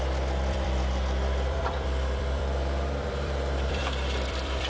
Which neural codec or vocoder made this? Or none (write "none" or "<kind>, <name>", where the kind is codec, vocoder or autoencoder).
vocoder, BigVGAN v2